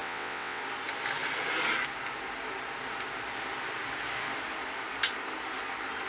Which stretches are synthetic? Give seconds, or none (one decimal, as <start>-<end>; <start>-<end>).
0.0-0.6